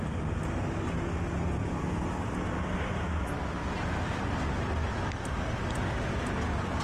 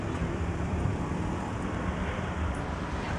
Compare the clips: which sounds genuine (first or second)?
first